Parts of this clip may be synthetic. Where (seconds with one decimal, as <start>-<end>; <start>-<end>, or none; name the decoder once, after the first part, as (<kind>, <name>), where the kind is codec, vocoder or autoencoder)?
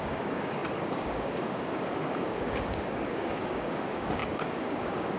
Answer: 0.0-5.2 (codec, DAC)